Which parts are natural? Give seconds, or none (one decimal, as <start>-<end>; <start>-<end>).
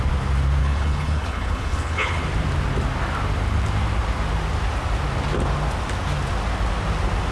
0.0-0.6; 2.2-7.3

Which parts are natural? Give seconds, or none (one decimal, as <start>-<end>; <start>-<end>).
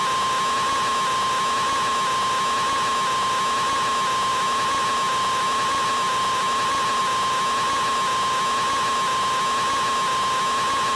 0.0-4.3; 7.0-11.0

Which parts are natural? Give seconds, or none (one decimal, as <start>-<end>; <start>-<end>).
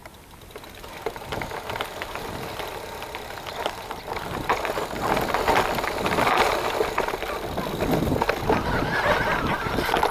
4.0-10.1